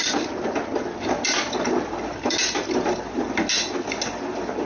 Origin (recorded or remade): recorded